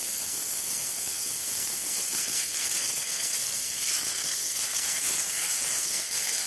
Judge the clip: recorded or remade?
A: remade